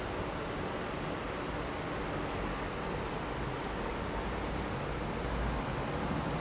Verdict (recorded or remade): recorded